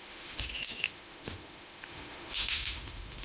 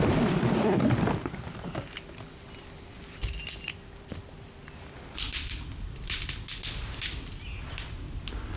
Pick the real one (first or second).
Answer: second